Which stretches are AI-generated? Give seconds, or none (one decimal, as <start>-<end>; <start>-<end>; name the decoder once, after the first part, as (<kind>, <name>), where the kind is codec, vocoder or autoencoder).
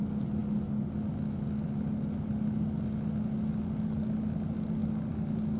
none